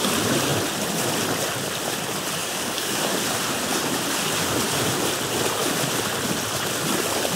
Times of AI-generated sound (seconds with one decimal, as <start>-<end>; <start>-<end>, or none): 2.4-3.0